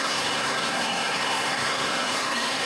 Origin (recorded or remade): remade